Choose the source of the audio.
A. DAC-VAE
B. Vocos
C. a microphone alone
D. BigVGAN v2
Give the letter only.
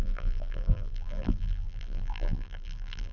D